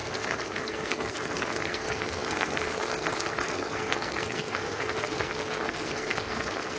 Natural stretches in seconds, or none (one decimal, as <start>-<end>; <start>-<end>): none